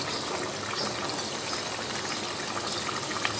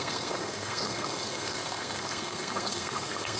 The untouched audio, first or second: first